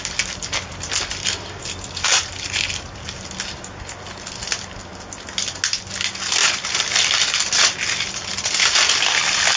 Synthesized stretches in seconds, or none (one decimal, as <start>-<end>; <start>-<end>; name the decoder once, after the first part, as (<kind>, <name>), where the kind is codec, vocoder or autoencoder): none